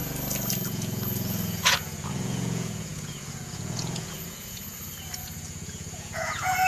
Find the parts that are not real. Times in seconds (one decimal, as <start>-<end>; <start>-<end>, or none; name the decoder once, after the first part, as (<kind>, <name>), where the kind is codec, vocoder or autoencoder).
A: 0.7-6.7 (vocoder, Vocos)